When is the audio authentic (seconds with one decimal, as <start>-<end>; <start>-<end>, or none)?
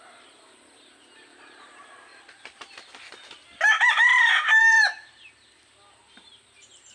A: 2.1-4.8